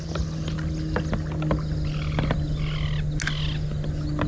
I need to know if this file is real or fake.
real